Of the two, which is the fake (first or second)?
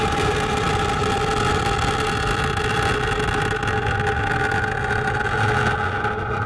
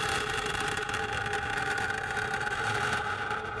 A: second